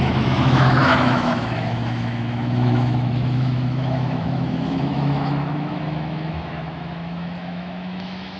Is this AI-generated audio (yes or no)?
yes